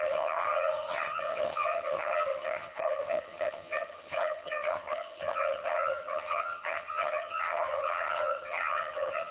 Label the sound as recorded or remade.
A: remade